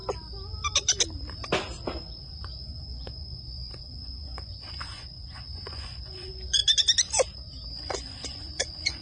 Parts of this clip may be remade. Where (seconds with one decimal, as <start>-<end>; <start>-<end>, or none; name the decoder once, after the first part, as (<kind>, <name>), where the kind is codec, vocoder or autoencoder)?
2.2-6.6 (vocoder, Vocos); 7.7-9.0